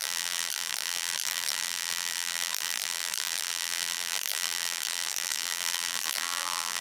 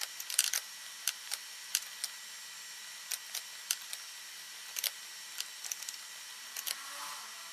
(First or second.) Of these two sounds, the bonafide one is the second